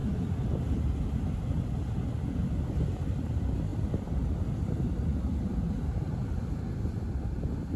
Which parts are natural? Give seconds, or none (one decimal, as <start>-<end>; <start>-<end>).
0.0-7.8